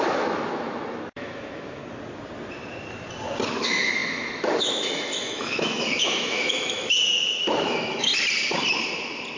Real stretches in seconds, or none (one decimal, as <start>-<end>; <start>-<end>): 1.8-3.6; 8.1-9.4